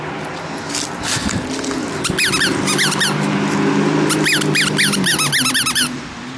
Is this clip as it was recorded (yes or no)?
yes